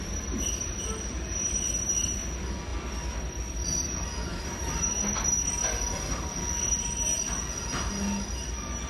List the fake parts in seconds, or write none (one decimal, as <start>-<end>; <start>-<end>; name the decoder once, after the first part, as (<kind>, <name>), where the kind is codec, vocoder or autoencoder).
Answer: 4.3-4.9 (vocoder, BigVGAN v2)